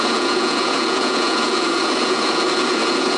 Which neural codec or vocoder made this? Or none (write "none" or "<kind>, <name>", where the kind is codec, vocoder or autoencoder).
vocoder, Vocos